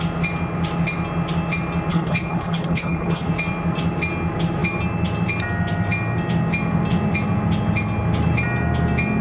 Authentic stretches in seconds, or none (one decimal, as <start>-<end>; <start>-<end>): 0.0-1.9; 3.3-9.2

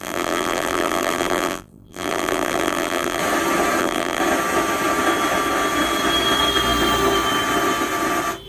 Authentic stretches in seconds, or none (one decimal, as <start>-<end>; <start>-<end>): 3.2-3.8; 4.2-8.5

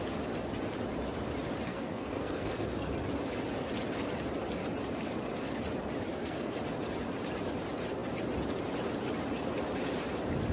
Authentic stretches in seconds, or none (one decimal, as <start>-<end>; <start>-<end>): 0.0-1.7; 2.9-6.1; 6.6-10.5

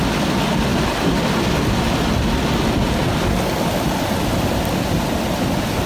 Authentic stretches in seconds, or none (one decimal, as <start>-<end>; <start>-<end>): 0.0-5.9

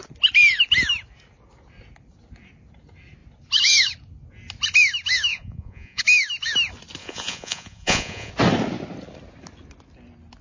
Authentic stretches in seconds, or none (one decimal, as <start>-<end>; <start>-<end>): 0.0-5.3; 6.0-7.0; 8.3-10.4

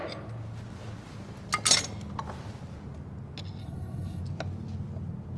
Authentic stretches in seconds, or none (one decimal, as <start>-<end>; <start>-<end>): 0.0-3.6; 4.2-5.4

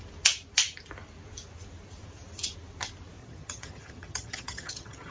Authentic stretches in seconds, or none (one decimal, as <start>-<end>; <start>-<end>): 0.0-3.2

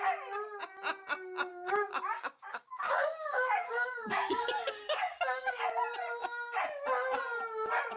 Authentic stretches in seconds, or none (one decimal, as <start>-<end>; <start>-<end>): 0.0-1.5; 5.6-8.0